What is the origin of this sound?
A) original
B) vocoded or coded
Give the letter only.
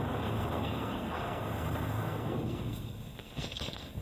B